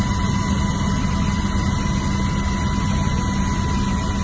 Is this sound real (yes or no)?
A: yes